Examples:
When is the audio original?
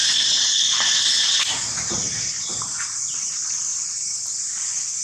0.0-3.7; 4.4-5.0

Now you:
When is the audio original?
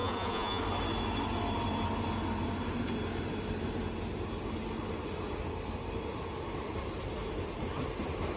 0.6-8.4